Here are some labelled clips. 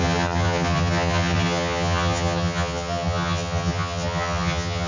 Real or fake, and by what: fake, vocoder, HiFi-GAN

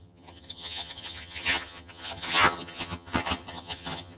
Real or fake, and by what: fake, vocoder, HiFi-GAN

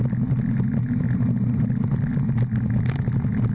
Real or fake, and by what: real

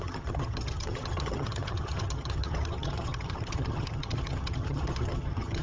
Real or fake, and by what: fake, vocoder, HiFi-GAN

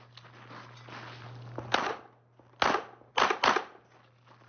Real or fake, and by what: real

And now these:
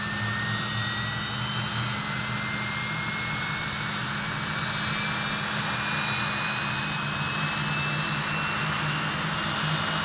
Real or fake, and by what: real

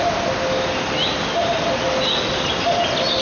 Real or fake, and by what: real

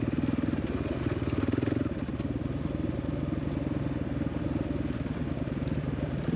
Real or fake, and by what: real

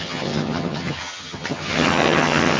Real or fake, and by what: fake, vocoder, HiFi-GAN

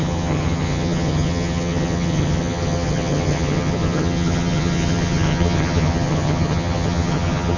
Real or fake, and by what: fake, vocoder, HiFi-GAN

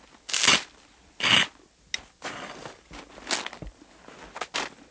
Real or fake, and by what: real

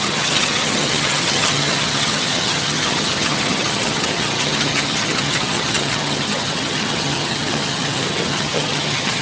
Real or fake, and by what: fake, vocoder, HiFi-GAN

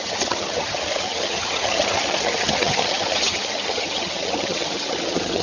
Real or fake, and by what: fake, vocoder, HiFi-GAN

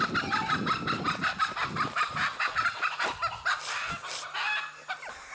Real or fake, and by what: real